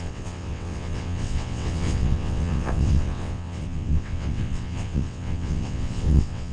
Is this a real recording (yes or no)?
no